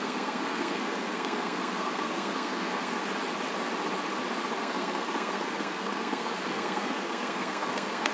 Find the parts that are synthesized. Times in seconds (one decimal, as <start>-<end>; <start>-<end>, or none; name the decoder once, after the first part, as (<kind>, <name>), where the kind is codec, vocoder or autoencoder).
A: 0.0-3.0 (codec, SNAC); 4.6-8.1